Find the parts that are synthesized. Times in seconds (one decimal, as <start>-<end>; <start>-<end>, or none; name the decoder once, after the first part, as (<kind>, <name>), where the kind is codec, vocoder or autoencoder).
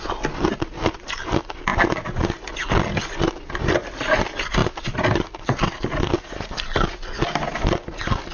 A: 4.6-6.0 (vocoder, BigVGAN v2)